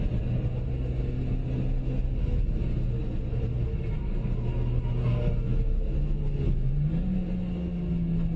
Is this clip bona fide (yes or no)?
yes